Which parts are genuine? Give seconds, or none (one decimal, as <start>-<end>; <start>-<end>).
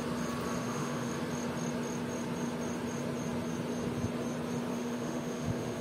0.0-0.6; 1.1-4.7